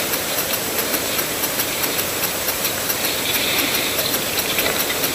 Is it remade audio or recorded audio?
remade